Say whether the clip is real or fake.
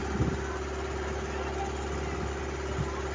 real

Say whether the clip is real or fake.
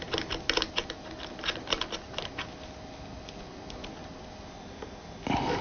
real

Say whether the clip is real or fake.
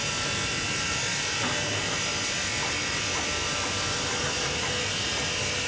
real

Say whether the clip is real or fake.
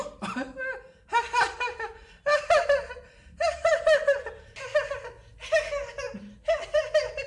real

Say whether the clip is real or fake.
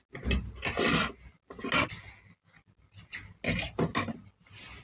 real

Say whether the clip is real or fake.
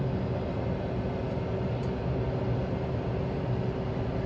real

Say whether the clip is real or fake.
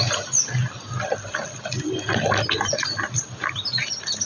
real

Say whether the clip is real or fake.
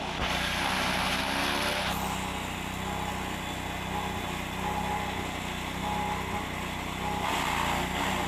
real